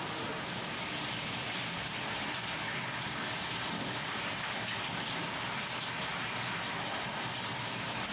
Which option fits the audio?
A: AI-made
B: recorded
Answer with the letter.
A